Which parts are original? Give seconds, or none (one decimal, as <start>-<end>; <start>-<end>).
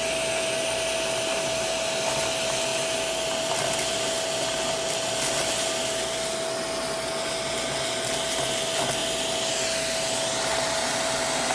0.0-11.5